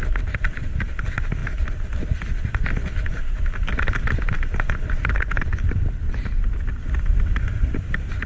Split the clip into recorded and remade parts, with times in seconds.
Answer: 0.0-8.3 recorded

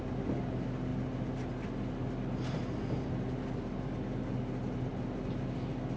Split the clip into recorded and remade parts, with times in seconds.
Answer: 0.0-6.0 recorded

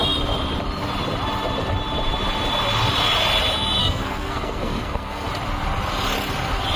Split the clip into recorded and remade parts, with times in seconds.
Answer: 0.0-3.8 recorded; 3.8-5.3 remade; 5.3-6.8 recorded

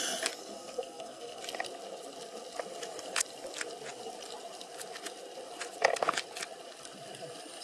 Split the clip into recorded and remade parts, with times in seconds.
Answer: 0.0-0.4 recorded; 0.4-1.4 remade; 1.4-7.6 recorded

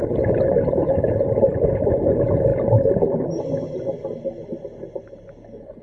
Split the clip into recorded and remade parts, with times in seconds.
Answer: 0.0-5.8 recorded